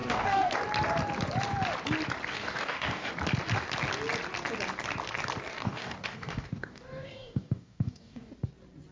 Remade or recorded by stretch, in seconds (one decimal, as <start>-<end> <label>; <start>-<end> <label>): 0.0-0.5 remade; 0.5-2.3 recorded; 2.3-3.1 remade; 3.1-5.5 recorded; 5.5-8.3 remade; 8.3-8.9 recorded